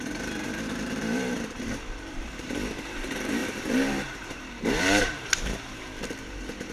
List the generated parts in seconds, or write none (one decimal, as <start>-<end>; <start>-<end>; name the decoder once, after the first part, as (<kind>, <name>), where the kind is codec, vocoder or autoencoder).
0.0-6.7 (vocoder, BigVGAN v2)